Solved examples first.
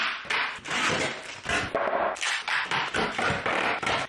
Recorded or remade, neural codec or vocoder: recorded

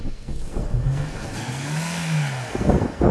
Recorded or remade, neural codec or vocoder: remade, codec, SNAC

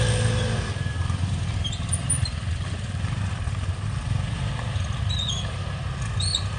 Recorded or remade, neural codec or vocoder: recorded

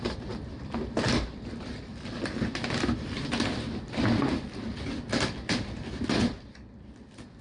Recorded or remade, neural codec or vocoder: recorded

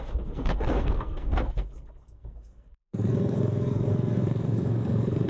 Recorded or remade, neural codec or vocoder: remade, codec, SNAC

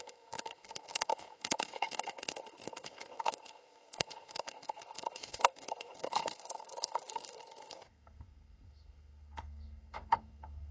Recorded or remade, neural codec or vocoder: remade, codec, SNAC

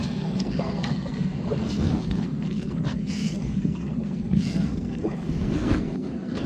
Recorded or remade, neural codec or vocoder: remade, codec, SNAC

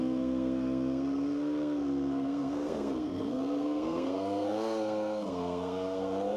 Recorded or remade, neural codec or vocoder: remade, codec, SNAC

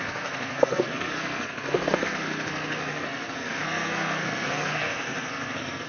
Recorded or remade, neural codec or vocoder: remade, codec, SNAC